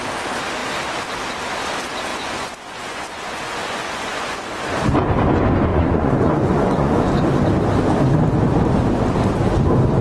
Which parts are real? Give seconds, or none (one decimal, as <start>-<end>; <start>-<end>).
0.0-2.1; 4.4-5.7; 7.1-10.0